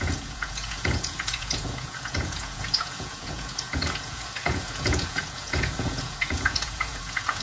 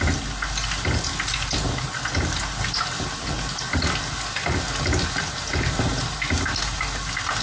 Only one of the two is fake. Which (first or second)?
first